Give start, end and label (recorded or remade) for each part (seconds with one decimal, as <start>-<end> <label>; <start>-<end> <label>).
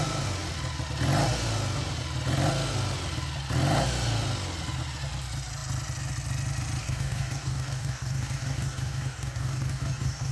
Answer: 0.0-6.8 recorded; 6.8-10.3 remade